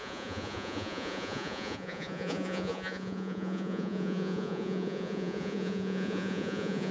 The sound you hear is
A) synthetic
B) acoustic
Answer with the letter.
A